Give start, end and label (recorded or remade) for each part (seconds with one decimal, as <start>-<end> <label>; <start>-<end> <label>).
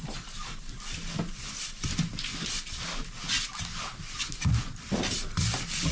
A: 0.0-5.9 recorded